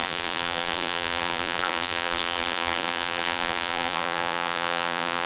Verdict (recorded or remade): remade